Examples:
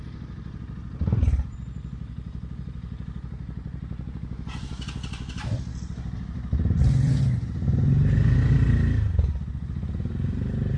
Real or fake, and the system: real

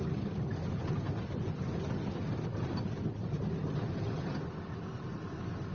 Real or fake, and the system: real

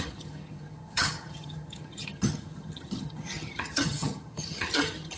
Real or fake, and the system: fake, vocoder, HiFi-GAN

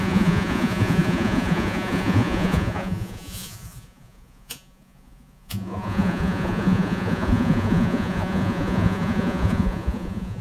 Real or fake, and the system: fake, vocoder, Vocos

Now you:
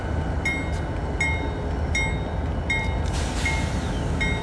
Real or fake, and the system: real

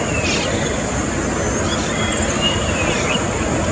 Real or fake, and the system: real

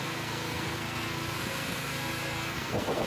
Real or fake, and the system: fake, codec, SNAC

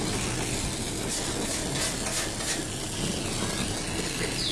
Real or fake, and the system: real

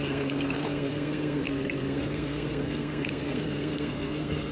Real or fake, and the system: fake, codec, SNAC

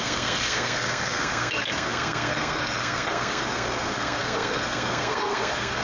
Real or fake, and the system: fake, codec, SNAC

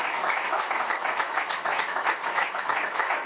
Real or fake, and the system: fake, autoencoder, DAC-VAE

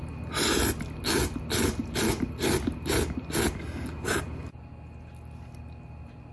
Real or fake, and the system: real